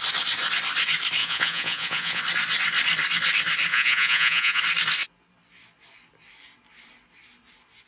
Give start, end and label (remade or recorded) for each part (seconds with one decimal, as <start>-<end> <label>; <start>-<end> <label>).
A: 0.0-1.2 recorded; 1.2-2.2 remade; 2.2-3.7 recorded; 3.7-4.6 remade; 4.6-7.9 recorded